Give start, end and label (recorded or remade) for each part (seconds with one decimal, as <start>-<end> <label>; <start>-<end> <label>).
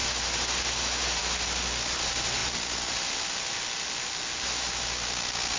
0.0-5.6 recorded